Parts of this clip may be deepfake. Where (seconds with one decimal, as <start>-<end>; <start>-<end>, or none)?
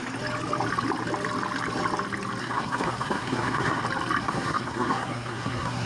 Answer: 2.4-3.8; 4.2-5.9